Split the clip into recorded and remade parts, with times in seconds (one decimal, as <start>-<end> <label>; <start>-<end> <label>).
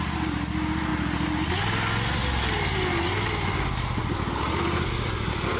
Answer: 0.0-5.6 recorded